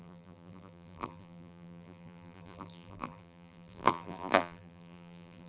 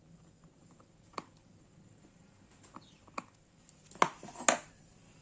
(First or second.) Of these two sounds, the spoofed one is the first